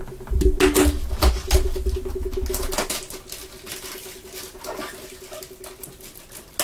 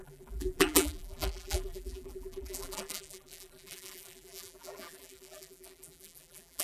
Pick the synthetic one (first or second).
second